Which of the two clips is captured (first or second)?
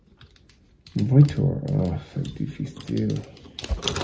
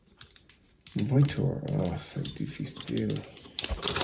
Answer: first